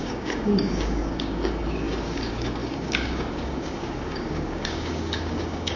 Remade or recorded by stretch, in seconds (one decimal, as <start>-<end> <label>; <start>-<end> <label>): 0.0-5.8 remade